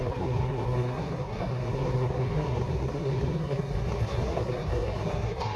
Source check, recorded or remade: remade